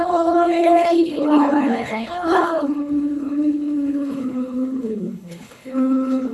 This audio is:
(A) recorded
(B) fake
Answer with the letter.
B